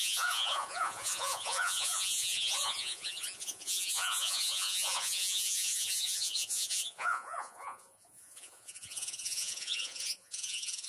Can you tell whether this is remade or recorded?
remade